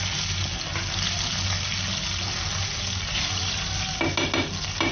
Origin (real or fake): real